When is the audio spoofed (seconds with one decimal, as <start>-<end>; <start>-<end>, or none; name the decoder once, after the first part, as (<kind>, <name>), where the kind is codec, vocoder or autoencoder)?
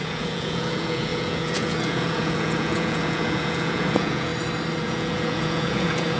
0.0-4.3 (vocoder, Vocos); 4.8-6.2